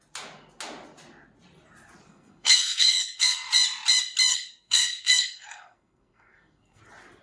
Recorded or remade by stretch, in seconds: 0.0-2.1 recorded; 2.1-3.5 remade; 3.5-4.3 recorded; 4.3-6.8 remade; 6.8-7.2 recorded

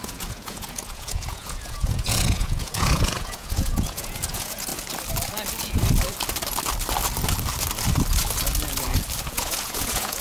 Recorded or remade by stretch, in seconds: 0.0-4.7 remade; 4.7-9.3 recorded; 9.3-10.2 remade